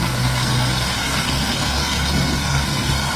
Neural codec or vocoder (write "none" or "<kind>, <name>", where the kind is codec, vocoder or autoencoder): codec, SNAC